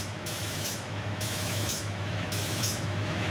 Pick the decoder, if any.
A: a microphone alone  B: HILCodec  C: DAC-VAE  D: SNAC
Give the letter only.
C